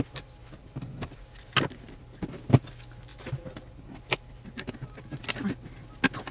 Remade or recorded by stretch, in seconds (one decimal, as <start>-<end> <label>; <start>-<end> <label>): 0.0-6.3 recorded